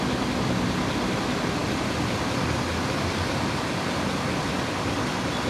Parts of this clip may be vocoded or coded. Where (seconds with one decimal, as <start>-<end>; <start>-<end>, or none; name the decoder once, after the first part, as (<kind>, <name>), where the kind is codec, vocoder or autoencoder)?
none